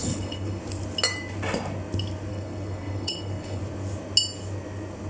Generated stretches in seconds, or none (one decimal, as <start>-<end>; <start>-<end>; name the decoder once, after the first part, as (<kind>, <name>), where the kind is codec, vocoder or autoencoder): 0.0-0.6 (codec, HILCodec); 2.3-3.6

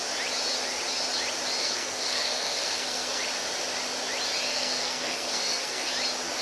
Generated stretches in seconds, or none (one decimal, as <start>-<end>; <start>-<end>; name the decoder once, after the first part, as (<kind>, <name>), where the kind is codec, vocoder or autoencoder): 1.6-3.2 (codec, SNAC); 4.5-5.9

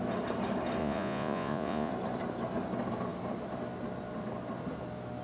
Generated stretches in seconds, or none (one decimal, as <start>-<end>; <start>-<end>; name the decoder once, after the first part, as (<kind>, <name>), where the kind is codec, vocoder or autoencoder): 0.8-1.9 (vocoder, Vocos)

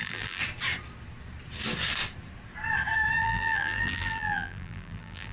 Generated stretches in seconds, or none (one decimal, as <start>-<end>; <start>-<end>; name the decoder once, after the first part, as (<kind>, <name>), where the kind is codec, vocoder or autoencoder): 0.0-0.4 (vocoder, BigVGAN v2); 3.2-5.3

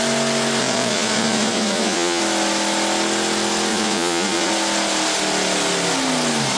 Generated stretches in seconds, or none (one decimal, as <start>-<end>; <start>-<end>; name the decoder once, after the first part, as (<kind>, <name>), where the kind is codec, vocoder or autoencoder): 0.6-2.2 (vocoder, Vocos); 3.7-4.5

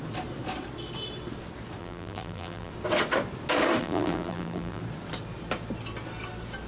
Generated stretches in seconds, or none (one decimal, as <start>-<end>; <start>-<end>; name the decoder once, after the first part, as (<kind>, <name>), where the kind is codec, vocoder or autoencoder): 1.8-2.7 (vocoder, BigVGAN v2); 3.8-4.8